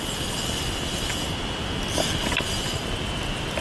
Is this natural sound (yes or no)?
yes